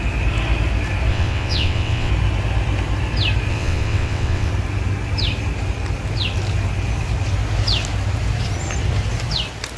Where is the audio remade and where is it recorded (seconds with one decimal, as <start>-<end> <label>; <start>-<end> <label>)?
0.0-1.1 recorded; 1.1-2.1 remade; 2.1-3.5 recorded; 3.5-4.5 remade; 4.5-9.8 recorded